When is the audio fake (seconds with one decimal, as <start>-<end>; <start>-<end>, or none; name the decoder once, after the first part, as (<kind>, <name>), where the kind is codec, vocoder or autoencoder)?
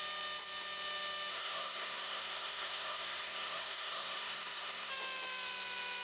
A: 1.3-4.9 (codec, SNAC)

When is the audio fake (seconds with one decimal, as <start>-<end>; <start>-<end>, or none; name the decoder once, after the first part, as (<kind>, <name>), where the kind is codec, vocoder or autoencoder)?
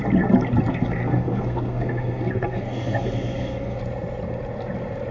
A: 0.7-3.8 (codec, SNAC)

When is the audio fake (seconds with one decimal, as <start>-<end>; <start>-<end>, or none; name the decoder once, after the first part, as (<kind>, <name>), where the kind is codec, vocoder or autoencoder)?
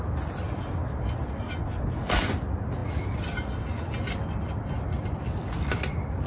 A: none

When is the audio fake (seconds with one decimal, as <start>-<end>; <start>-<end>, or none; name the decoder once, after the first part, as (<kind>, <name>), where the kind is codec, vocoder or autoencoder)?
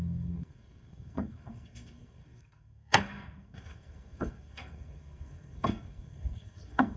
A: 0.0-7.0 (codec, SNAC)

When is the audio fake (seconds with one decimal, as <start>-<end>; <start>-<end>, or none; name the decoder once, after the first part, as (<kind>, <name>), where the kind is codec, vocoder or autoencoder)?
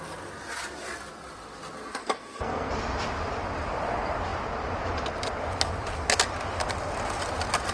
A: 2.0-2.7 (codec, SNAC)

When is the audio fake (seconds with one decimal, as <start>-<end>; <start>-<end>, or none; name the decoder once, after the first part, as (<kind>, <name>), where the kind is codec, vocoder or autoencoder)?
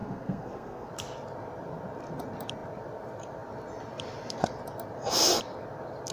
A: 0.0-0.9 (codec, SNAC)